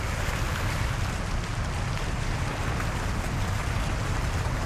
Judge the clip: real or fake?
real